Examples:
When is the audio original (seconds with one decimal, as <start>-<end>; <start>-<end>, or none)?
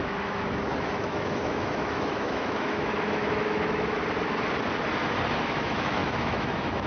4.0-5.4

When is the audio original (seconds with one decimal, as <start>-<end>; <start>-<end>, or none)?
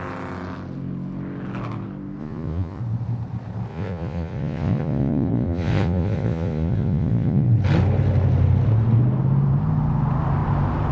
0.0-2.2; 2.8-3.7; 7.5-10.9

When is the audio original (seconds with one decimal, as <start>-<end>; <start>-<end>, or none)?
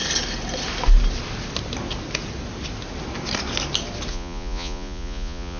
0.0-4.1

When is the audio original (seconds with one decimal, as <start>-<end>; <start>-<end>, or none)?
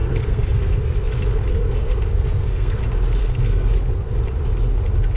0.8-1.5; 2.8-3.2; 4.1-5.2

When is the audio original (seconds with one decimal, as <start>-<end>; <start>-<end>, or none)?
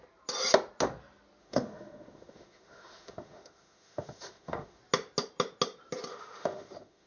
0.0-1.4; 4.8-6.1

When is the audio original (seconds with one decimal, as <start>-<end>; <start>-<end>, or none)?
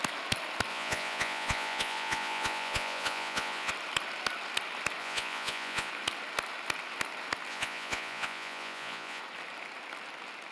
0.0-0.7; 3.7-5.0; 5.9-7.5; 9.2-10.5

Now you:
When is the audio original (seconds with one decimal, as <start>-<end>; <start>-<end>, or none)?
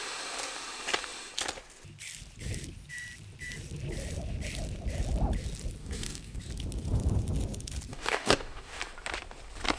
0.0-5.8; 6.4-7.9; 8.8-9.8